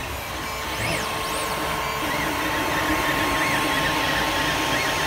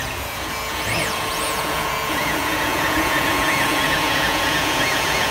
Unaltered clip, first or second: first